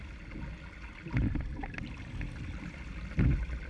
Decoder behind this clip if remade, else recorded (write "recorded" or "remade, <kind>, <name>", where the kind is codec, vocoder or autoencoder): recorded